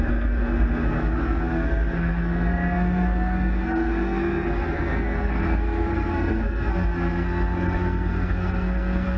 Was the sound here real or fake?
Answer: fake